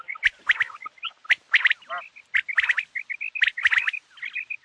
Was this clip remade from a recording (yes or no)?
no